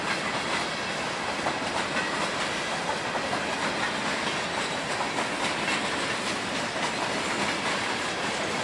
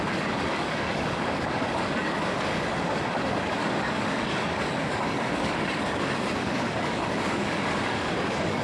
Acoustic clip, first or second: first